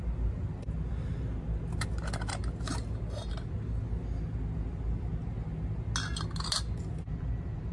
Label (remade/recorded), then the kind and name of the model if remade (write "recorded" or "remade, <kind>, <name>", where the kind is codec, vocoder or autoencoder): recorded